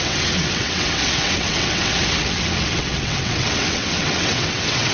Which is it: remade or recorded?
remade